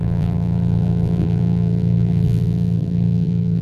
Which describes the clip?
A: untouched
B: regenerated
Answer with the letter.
B